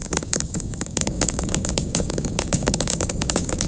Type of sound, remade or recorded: remade